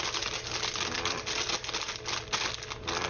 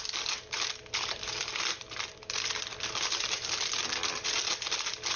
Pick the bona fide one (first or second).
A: first